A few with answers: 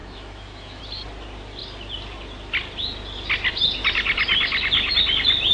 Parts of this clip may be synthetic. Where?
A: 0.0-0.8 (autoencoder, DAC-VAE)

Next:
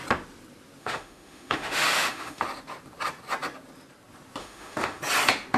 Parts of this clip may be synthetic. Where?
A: 0.8-2.4 (autoencoder, DAC-VAE); 4.4-5.0

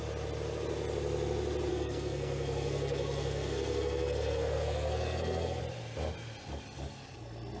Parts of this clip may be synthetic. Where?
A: 1.7-5.6 (codec, SNAC)

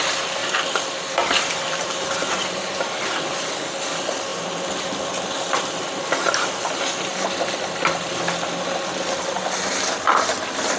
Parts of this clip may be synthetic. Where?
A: 0.4-3.2 (vocoder, BigVGAN v2); 4.3-6.5

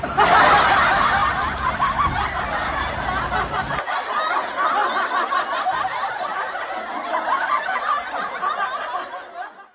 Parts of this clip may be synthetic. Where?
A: none

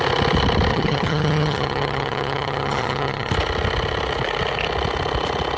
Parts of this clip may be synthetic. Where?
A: 0.7-3.3 (vocoder, HiFi-GAN)

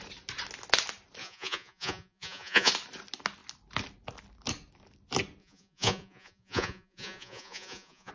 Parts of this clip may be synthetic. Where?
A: 1.2-2.7 (vocoder, Vocos); 5.4-8.1